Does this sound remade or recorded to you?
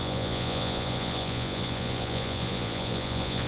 remade